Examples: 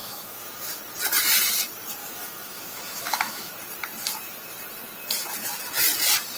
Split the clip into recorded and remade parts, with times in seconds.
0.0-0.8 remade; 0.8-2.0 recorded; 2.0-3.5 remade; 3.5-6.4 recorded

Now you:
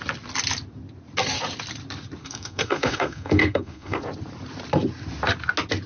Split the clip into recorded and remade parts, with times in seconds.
0.0-2.2 recorded; 2.2-4.0 remade; 4.0-5.9 recorded

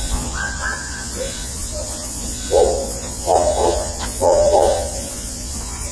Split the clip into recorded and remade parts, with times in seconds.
0.0-5.9 remade

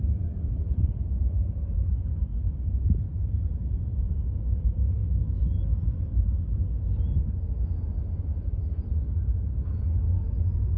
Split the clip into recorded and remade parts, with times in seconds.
0.0-2.3 remade; 2.3-2.9 recorded; 2.9-5.0 remade; 5.0-8.2 recorded; 8.2-8.6 remade; 8.6-10.3 recorded; 10.3-10.8 remade

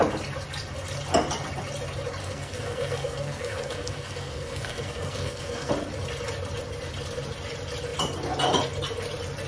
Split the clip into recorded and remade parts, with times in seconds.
0.0-2.2 recorded; 2.2-5.7 remade; 5.7-9.5 recorded

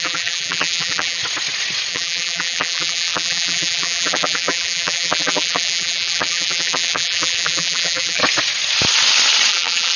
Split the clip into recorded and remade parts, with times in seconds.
0.0-1.2 remade; 1.2-1.9 recorded; 1.9-8.2 remade; 8.2-9.5 recorded; 9.5-10.0 remade